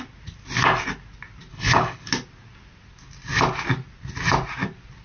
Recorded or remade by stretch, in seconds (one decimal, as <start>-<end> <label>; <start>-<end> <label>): 0.0-1.5 recorded; 1.5-2.1 remade; 2.1-5.0 recorded